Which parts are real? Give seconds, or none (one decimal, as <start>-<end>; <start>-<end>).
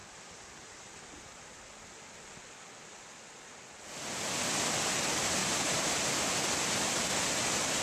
0.0-5.4; 6.1-7.8